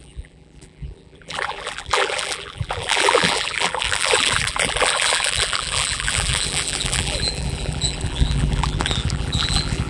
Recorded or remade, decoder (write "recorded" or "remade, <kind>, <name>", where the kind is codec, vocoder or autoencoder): remade, vocoder, BigVGAN v2